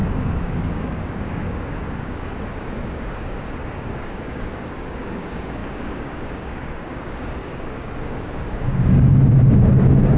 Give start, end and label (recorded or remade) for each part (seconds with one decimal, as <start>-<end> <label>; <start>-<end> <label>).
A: 0.0-10.2 remade